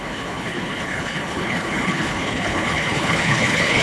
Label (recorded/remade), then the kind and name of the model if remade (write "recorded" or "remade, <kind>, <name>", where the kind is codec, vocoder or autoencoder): remade, codec, HILCodec